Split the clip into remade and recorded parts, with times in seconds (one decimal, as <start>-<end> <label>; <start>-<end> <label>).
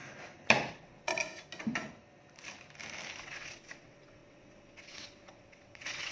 0.0-0.7 recorded; 0.7-1.1 remade; 1.1-3.2 recorded; 3.2-6.1 remade